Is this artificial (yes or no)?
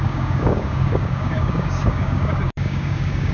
yes